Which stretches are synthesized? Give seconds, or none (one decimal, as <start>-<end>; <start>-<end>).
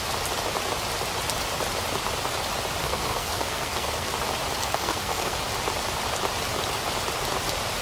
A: 2.8-4.1; 4.6-5.4